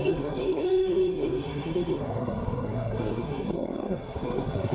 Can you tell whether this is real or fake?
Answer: fake